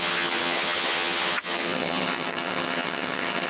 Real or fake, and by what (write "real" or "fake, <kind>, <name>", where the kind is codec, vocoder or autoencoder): fake, vocoder, HiFi-GAN